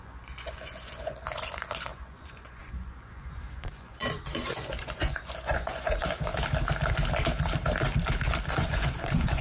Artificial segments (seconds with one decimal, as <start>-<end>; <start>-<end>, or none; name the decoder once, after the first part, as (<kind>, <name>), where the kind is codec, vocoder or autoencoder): 0.0-6.3 (vocoder, Vocos); 8.5-9.4